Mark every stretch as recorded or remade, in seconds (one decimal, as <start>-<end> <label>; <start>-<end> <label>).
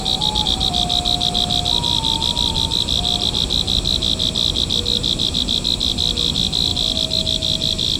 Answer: 0.0-8.0 recorded